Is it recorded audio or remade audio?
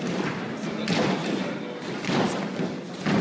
recorded